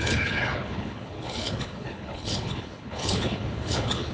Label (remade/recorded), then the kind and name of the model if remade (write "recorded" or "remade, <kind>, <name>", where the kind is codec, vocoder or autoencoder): remade, codec, HILCodec